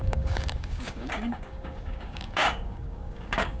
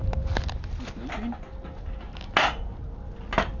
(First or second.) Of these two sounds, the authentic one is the second